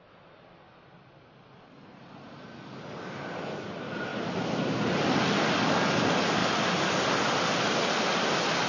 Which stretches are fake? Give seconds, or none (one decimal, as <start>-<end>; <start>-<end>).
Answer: none